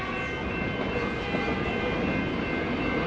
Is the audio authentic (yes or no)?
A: yes